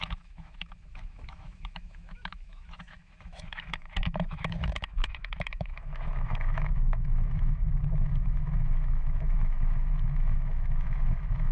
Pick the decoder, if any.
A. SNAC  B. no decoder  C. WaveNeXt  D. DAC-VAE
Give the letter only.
D